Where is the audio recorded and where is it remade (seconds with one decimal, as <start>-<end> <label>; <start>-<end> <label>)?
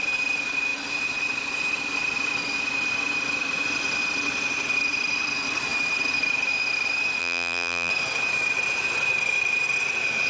0.0-7.2 recorded; 7.2-7.9 remade; 7.9-10.3 recorded